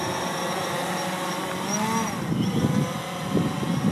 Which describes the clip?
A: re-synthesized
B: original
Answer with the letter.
B